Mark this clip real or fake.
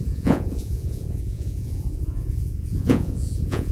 fake